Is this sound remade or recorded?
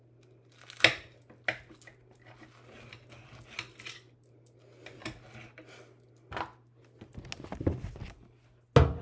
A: recorded